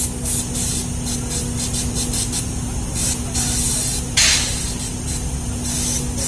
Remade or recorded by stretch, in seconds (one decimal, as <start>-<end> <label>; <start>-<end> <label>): 0.0-6.3 recorded